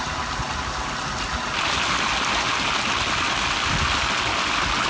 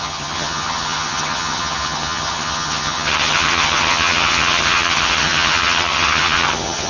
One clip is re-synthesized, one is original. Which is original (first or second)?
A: first